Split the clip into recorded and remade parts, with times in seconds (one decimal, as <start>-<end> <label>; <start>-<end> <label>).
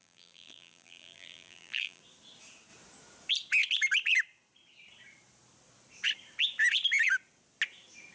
0.0-2.0 remade; 2.0-8.1 recorded